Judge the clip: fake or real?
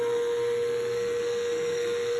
fake